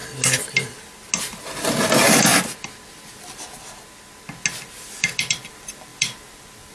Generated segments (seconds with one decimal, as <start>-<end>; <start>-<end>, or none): 1.7-2.3; 4.8-6.7